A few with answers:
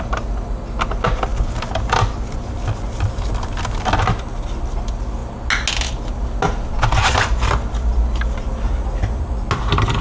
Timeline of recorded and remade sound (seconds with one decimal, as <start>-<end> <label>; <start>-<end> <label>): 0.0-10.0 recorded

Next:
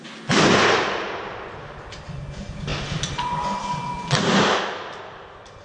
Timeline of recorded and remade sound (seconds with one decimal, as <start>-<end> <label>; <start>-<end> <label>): 0.0-5.6 recorded

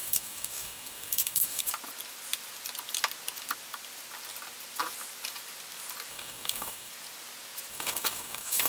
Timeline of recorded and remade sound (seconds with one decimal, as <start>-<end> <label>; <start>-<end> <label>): 0.0-1.7 remade; 1.7-6.1 recorded; 6.1-6.9 remade; 6.9-7.7 recorded; 7.7-8.7 remade

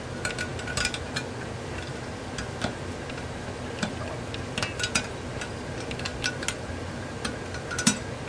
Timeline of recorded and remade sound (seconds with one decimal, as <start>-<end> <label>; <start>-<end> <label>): 0.0-8.3 recorded